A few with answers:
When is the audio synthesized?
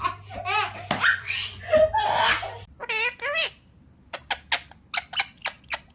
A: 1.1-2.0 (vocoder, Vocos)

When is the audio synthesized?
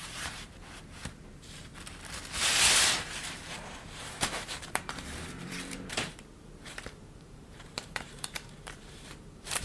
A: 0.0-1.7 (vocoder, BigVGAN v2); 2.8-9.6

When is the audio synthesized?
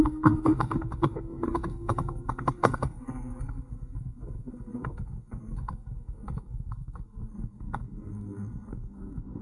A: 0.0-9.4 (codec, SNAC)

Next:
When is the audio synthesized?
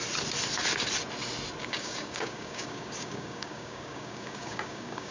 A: 1.6-5.1 (codec, DAC)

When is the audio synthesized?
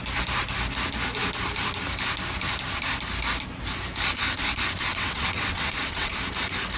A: 4.9-6.1 (vocoder, WaveNeXt)